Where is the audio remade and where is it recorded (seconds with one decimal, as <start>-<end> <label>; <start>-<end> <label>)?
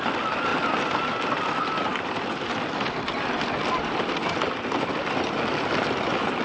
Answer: 0.0-6.4 recorded